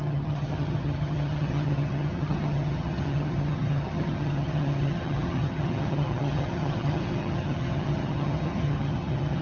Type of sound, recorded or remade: remade